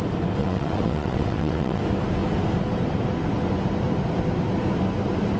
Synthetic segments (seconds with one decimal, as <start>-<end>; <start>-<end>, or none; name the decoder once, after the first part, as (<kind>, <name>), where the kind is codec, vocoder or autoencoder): 0.4-1.8 (vocoder, WaveNeXt)